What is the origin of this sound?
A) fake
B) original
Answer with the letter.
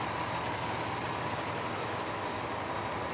B